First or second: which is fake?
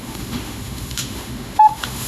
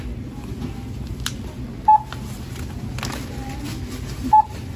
first